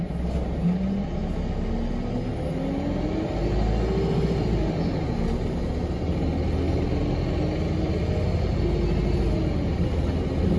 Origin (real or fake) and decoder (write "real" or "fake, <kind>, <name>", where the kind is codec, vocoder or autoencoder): real